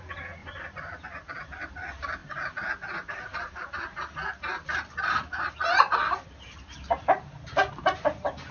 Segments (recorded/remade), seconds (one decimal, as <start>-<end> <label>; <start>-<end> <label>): 0.0-8.5 recorded